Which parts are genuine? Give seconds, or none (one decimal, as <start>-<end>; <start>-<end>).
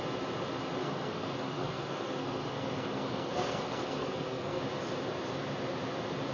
0.0-0.8; 4.6-6.3